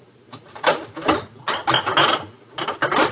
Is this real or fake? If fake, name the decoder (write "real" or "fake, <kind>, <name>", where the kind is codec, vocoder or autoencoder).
real